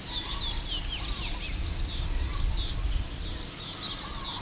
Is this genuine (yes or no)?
yes